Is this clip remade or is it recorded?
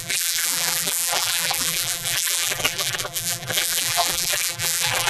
remade